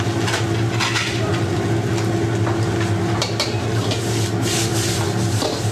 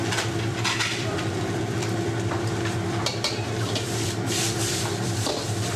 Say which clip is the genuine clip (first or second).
first